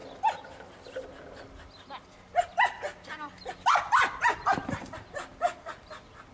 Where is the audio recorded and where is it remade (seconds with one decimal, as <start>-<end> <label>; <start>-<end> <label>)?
0.0-6.3 recorded